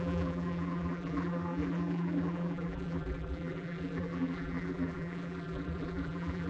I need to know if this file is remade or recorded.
remade